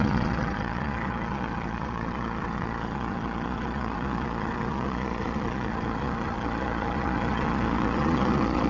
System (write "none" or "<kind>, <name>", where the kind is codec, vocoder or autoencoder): vocoder, Vocos